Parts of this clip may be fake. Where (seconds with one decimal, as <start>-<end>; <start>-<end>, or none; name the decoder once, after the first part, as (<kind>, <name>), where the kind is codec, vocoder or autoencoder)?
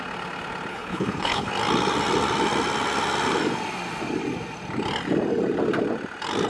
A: 0.7-1.5 (codec, HILCodec)